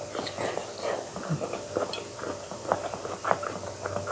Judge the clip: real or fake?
real